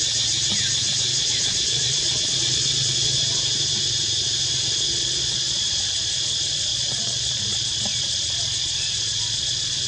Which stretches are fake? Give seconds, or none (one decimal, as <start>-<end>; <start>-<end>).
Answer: 1.1-3.2; 4.9-5.8; 6.7-7.4